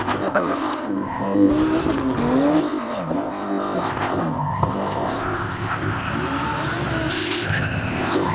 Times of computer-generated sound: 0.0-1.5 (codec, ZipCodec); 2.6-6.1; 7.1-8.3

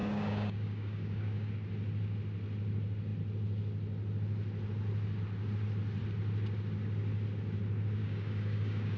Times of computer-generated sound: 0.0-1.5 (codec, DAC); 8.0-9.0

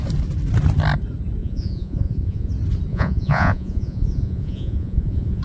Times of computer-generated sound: 1.4-2.5 (vocoder, Vocos); 2.9-5.4

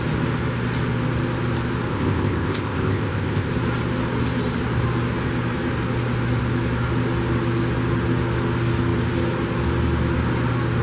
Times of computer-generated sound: 1.9-3.5 (codec, ZipCodec)

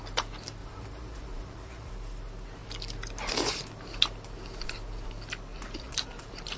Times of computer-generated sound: 0.6-1.9 (vocoder, BigVGAN v2); 5.5-6.6

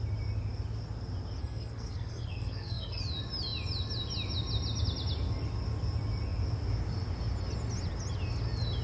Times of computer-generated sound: 1.4-3.0 (codec, SNAC)